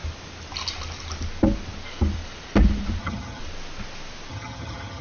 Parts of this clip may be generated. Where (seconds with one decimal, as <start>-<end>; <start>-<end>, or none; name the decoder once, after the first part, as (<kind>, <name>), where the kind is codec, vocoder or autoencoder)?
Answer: 3.0-3.4 (vocoder, HiFi-GAN); 4.3-5.0